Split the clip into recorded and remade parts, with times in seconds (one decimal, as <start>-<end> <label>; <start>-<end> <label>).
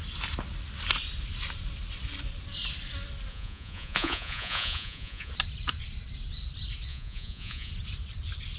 0.0-3.3 recorded; 3.3-5.3 remade; 5.3-6.9 recorded; 6.9-7.7 remade; 7.7-8.6 recorded